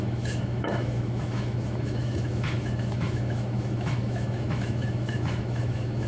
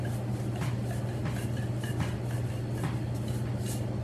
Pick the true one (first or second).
second